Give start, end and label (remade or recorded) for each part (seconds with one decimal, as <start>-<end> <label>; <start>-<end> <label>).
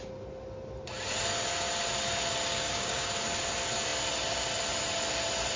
0.0-2.5 recorded; 2.5-3.1 remade; 3.1-5.6 recorded